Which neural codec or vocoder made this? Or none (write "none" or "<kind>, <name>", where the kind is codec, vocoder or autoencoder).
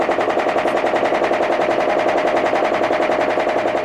none